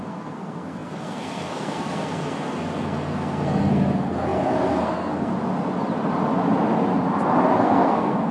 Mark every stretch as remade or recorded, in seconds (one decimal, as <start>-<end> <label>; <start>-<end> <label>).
0.0-5.3 remade; 5.3-7.6 recorded; 7.6-8.3 remade